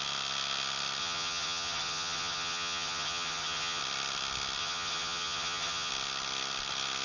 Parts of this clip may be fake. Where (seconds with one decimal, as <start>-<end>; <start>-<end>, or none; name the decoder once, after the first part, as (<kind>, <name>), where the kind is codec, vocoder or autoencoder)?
1.0-3.8 (vocoder, HiFi-GAN); 4.6-5.9

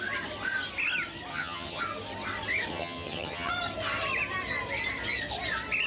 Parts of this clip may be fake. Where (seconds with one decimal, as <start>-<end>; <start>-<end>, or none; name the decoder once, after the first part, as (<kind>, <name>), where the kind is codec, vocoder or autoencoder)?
1.3-1.8 (vocoder, HiFi-GAN); 2.7-3.5

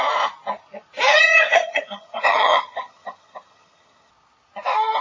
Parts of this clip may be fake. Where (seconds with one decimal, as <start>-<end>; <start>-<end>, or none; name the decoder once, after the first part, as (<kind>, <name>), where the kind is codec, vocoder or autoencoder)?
1.1-4.1 (vocoder, HiFi-GAN)

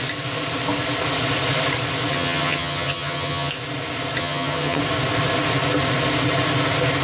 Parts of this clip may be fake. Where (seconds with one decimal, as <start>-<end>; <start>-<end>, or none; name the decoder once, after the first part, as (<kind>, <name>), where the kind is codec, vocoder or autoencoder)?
2.1-3.5 (vocoder, HiFi-GAN); 4.2-4.8

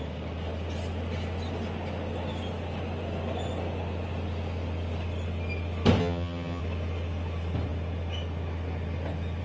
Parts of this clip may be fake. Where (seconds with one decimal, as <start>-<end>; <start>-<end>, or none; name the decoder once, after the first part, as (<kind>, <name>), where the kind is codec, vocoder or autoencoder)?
6.0-6.6 (vocoder, HiFi-GAN)

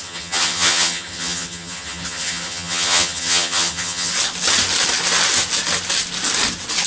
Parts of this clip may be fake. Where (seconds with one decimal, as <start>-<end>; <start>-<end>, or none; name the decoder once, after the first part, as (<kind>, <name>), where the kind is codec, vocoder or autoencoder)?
0.0-4.1 (vocoder, HiFi-GAN)

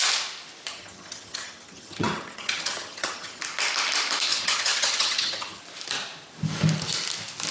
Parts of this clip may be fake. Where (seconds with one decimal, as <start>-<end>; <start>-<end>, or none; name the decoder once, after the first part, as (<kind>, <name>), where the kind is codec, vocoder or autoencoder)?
0.7-3.4 (vocoder, HiFi-GAN); 4.3-5.6

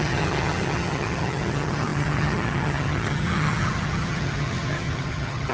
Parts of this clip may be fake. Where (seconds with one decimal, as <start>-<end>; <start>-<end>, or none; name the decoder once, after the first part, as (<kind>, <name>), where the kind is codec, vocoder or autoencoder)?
0.0-5.5 (vocoder, HiFi-GAN)